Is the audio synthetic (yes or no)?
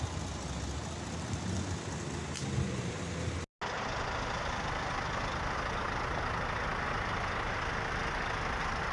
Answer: no